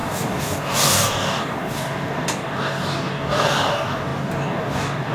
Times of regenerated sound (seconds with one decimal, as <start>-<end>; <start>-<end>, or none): 0.0-5.1